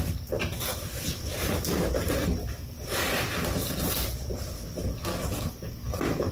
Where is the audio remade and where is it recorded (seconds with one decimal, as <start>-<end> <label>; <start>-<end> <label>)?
0.0-2.4 recorded; 2.4-3.1 remade; 3.1-5.1 recorded; 5.1-6.3 remade